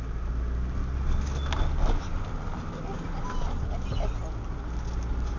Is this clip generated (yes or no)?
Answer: no